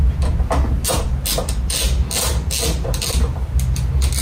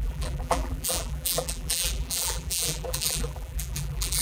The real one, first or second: first